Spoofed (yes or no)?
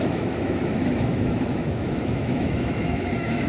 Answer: yes